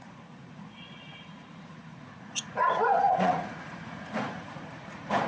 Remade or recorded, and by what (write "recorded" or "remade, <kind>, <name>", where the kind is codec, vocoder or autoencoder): remade, vocoder, Vocos